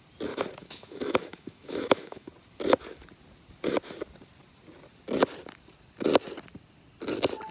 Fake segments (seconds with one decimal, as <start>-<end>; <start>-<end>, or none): 0.6-2.3